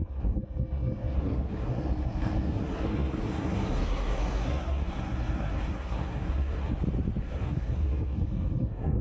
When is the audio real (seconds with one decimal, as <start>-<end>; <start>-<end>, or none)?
6.7-7.2

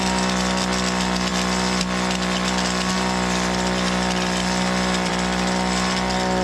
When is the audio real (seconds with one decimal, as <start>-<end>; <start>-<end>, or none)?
0.0-6.4

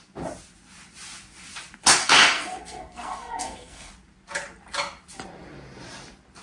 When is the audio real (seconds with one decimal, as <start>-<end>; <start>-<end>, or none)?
0.0-2.0; 3.9-6.4

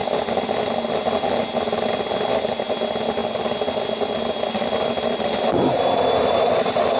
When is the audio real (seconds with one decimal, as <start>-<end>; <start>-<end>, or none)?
0.0-7.0

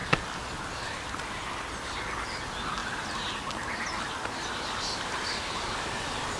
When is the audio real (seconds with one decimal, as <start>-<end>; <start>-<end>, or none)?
0.0-6.4

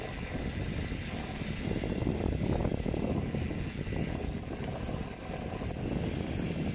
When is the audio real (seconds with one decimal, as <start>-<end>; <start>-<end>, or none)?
0.0-6.7

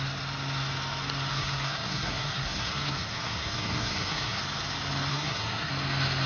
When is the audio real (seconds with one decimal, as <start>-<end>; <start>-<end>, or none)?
0.0-1.3; 4.4-5.1; 5.7-6.3